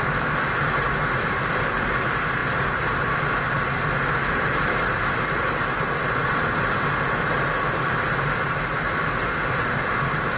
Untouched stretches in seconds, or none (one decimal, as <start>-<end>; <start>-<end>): 0.0-10.4